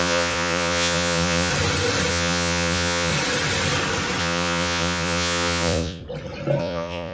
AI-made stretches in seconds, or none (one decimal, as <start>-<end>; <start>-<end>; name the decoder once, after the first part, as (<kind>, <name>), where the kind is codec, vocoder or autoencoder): 0.0-1.5 (vocoder, Vocos); 2.1-3.1; 4.2-6.0; 6.6-7.1